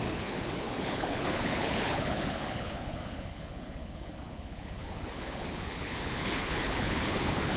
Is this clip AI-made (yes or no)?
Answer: yes